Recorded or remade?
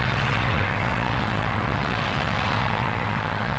remade